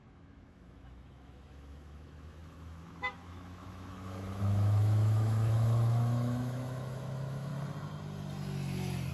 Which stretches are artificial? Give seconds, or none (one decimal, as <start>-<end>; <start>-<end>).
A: 0.0-7.5